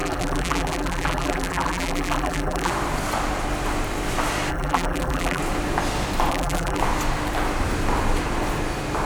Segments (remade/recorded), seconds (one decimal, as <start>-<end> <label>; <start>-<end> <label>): 0.0-2.7 remade; 2.7-4.5 recorded; 4.5-5.4 remade; 5.4-6.3 recorded; 6.3-6.8 remade; 6.8-9.0 recorded

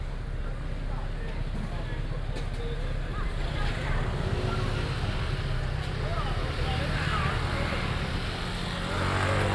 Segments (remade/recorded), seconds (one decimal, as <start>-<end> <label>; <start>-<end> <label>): 0.0-3.1 recorded; 3.1-4.0 remade; 4.0-9.5 recorded

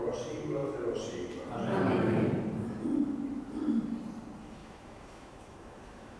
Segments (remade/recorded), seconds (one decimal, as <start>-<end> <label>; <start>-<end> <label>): 0.0-4.6 recorded; 4.6-6.2 remade

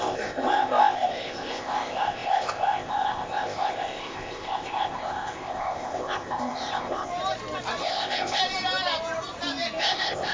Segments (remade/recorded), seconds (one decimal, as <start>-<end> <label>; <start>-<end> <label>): 0.0-7.1 remade; 7.1-7.8 recorded; 7.8-8.4 remade; 8.4-9.8 recorded; 9.8-10.3 remade

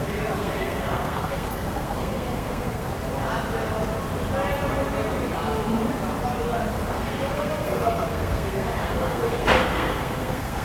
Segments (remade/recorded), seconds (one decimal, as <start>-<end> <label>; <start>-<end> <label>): 0.0-2.9 remade; 2.9-6.7 recorded; 6.7-10.6 remade

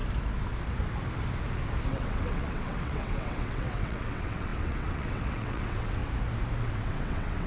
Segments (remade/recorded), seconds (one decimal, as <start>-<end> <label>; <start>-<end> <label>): 0.0-1.9 recorded; 1.9-6.0 remade; 6.0-6.6 recorded; 6.6-7.5 remade

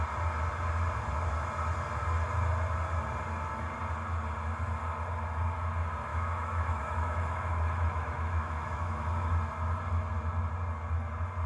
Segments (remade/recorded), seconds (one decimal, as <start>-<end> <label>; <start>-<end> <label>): 0.0-6.1 recorded; 6.1-9.3 remade; 9.3-11.5 recorded

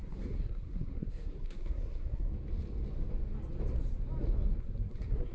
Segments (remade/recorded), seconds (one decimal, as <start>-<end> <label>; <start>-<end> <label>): 0.0-2.3 remade; 2.3-4.6 recorded; 4.6-5.3 remade